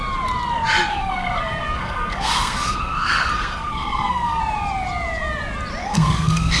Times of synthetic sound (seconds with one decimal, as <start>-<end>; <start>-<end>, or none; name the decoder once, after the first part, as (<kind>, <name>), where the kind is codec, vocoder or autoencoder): 0.9-4.4 (codec, SNAC); 5.8-6.6